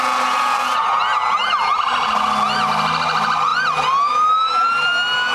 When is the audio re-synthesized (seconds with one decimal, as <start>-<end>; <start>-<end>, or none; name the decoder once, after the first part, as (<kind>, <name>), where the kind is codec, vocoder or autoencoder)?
none